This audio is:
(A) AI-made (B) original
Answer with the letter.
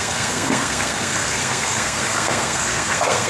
A